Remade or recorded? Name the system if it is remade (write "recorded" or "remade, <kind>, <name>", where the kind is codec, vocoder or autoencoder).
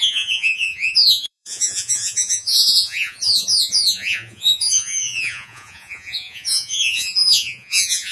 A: remade, vocoder, Vocos